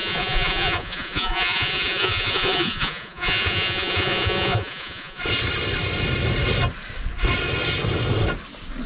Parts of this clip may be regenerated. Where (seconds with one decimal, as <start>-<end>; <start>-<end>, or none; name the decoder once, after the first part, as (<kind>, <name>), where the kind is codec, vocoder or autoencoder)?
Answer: 0.0-5.2 (vocoder, Vocos)